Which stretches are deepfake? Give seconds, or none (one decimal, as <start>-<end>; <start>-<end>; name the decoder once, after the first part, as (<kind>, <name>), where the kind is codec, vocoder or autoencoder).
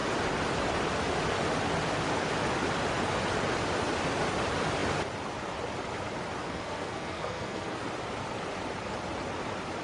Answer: 6.4-7.9 (codec, SNAC)